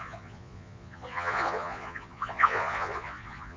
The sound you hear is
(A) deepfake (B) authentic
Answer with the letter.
A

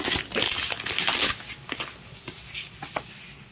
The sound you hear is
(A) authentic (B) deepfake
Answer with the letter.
A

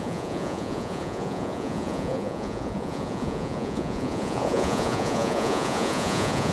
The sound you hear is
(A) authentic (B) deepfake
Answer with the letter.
B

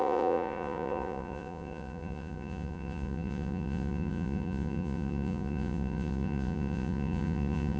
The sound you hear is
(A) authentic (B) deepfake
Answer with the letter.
B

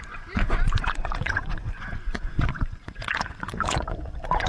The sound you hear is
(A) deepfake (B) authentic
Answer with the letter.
A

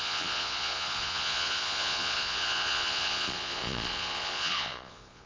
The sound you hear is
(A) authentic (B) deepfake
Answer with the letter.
B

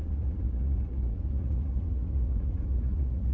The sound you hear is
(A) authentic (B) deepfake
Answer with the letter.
B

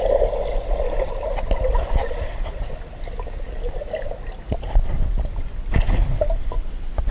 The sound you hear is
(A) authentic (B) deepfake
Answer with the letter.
A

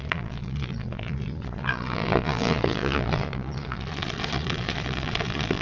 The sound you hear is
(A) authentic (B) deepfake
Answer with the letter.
B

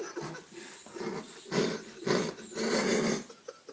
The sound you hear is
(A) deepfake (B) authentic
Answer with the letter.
B